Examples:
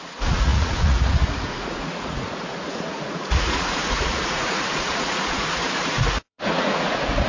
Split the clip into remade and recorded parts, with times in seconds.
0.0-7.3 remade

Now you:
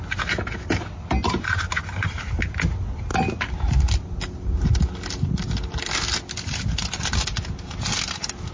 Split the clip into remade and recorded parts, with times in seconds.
0.0-8.5 recorded

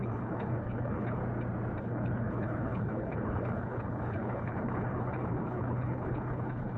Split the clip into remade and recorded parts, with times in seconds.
0.0-1.2 remade; 1.2-1.8 recorded; 1.8-6.8 remade

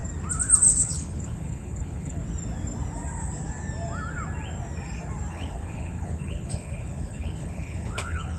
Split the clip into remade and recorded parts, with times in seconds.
0.0-0.7 recorded; 0.7-2.2 remade; 2.2-5.3 recorded; 5.3-8.4 remade

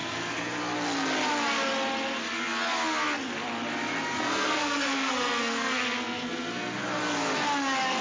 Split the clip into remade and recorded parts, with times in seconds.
0.0-4.2 recorded; 4.2-6.8 remade; 6.8-8.0 recorded

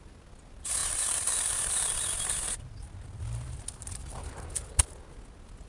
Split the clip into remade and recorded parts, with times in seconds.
0.0-0.8 recorded; 0.8-4.2 remade; 4.2-5.7 recorded